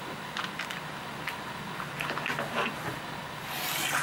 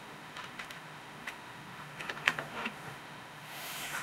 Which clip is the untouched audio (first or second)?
first